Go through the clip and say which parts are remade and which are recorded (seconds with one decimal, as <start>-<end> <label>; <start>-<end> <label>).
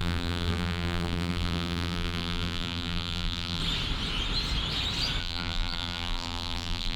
0.0-3.6 remade; 3.6-5.2 recorded; 5.2-7.0 remade